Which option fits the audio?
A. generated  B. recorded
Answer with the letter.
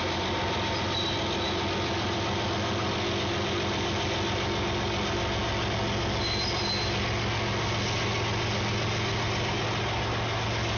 B